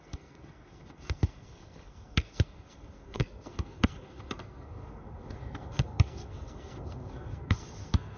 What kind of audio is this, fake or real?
fake